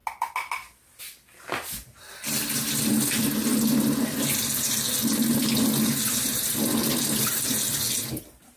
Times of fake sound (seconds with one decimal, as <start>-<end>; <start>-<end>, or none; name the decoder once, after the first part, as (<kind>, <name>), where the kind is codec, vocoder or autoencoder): none